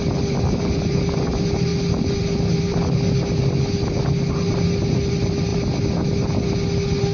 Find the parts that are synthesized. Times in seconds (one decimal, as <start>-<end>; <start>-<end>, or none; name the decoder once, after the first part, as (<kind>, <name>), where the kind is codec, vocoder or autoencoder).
none